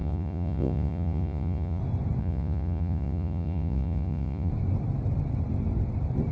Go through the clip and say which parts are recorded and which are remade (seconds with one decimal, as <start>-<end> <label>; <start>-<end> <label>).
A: 0.0-1.8 remade; 1.8-2.2 recorded; 2.2-4.5 remade; 4.5-6.3 recorded